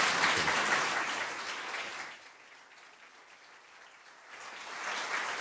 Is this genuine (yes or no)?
yes